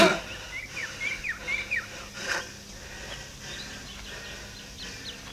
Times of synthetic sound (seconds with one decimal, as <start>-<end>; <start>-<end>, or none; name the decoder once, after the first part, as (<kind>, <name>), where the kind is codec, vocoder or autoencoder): none